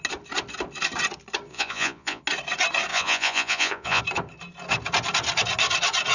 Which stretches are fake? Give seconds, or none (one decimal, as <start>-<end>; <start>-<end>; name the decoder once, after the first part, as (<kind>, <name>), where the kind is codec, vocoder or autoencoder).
1.5-2.2 (vocoder, Vocos); 2.9-4.0